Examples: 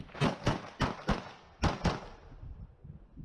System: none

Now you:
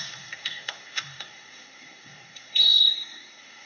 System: codec, SNAC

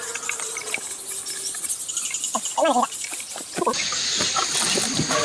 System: none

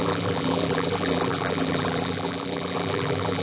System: vocoder, BigVGAN v2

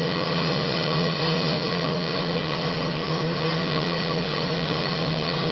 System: vocoder, Vocos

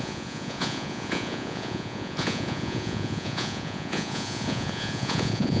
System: vocoder, Vocos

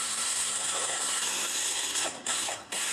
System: codec, SNAC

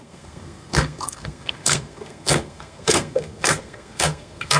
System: codec, SNAC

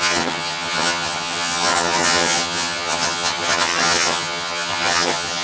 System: vocoder, HiFi-GAN